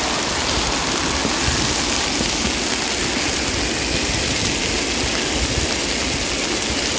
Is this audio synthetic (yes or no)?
no